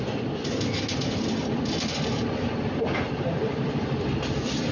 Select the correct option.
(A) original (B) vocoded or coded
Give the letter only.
A